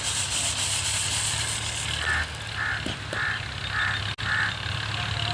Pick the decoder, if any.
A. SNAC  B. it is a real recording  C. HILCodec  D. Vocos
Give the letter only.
B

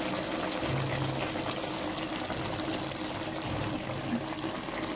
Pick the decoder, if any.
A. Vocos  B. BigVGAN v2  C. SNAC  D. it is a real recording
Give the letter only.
D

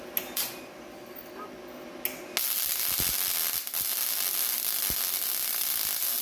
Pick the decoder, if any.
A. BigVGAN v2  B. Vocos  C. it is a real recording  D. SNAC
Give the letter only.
C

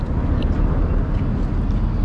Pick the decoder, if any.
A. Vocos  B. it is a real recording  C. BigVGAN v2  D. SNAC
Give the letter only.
B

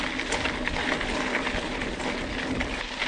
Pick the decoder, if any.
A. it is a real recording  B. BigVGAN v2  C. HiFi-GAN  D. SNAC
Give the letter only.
A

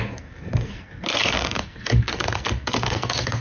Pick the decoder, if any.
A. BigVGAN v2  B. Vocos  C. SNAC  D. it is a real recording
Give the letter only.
C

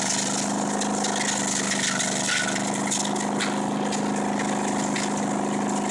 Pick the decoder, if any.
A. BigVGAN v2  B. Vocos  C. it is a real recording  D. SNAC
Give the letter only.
C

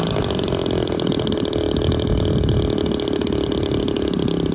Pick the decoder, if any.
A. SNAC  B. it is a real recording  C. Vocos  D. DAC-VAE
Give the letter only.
B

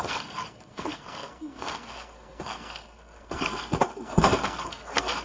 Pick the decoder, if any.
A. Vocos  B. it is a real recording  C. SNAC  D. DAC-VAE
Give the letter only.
C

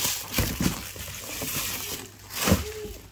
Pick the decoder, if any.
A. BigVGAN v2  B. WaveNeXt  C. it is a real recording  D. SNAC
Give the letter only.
C